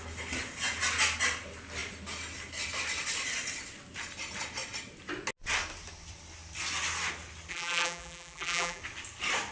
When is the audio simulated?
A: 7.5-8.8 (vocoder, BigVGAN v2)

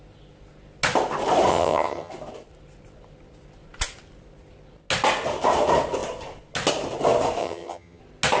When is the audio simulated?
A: 1.5-2.1 (vocoder, HiFi-GAN); 7.4-8.0

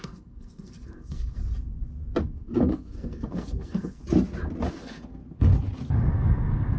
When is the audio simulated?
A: 0.0-1.4 (codec, SNAC); 2.2-4.0; 4.7-5.2; 6.1-6.8

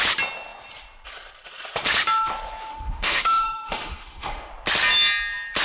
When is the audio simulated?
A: 2.7-4.5 (autoencoder, DAC-VAE)